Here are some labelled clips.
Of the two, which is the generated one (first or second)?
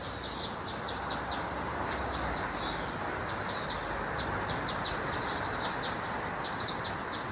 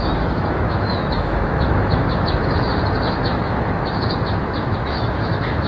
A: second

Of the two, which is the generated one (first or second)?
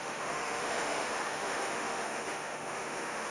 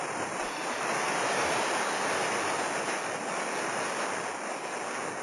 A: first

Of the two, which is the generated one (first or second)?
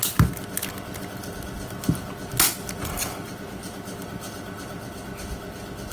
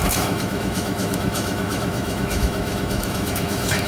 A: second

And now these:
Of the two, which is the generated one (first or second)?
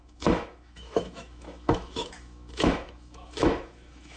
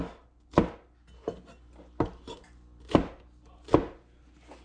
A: first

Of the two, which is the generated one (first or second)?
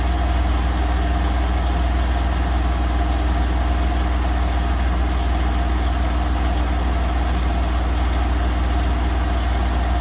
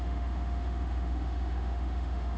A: second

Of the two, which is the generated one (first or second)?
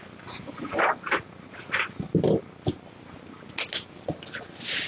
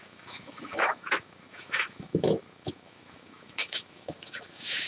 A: second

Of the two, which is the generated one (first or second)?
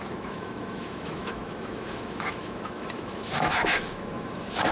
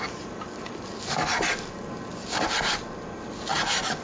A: first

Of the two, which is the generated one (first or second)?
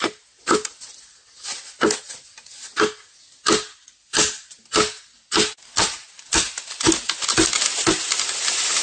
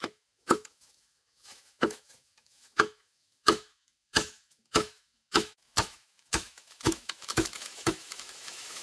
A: second